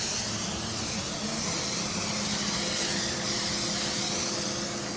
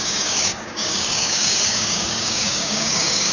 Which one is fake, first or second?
second